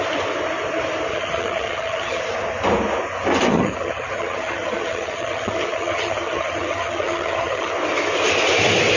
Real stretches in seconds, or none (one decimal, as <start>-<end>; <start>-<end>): 0.0-1.1; 2.2-3.5; 7.7-9.0